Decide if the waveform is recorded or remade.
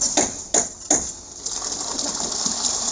recorded